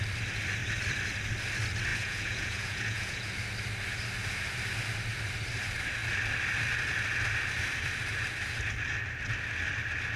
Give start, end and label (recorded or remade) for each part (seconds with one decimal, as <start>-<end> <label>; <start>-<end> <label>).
0.0-1.9 recorded; 1.9-3.3 remade; 3.3-10.2 recorded